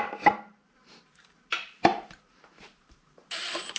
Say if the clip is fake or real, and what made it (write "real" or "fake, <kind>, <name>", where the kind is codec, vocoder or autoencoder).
fake, vocoder, BigVGAN v2